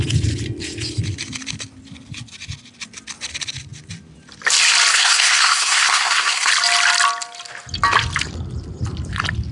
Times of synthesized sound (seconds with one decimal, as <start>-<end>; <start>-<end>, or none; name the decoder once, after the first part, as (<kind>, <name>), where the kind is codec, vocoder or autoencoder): 4.9-6.5 (codec, SNAC)